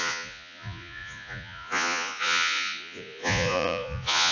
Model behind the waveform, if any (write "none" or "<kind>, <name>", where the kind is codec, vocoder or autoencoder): vocoder, Vocos